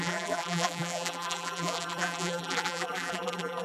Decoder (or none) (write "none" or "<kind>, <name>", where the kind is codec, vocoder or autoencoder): vocoder, BigVGAN v2